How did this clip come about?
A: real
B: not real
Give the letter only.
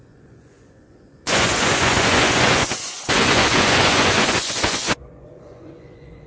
B